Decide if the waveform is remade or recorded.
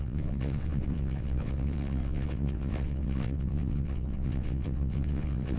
remade